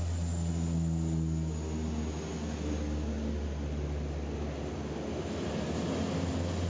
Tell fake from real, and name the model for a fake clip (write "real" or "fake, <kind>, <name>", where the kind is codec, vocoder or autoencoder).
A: real